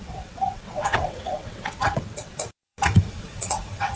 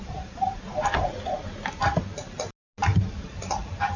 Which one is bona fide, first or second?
second